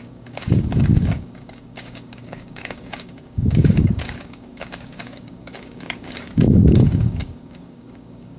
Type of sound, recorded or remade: remade